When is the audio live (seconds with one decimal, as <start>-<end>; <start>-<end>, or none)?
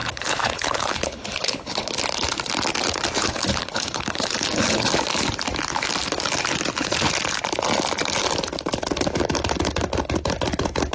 1.9-3.2; 4.9-10.9